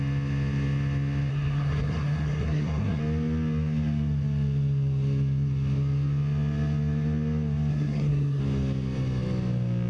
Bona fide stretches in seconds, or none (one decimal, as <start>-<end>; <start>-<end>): 0.0-1.3; 3.0-7.7; 8.4-9.9